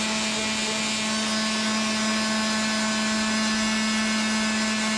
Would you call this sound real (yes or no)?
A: yes